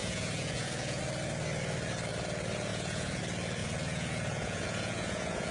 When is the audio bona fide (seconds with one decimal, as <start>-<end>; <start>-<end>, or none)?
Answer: 1.0-2.7; 3.2-3.6